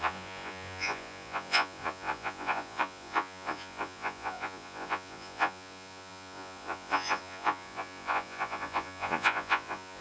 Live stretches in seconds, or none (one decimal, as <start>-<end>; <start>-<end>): none